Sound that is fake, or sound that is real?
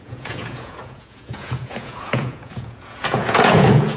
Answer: fake